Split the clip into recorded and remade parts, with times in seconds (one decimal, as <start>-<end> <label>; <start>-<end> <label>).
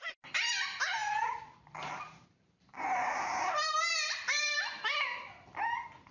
0.0-1.0 recorded; 1.0-3.8 remade; 3.8-6.1 recorded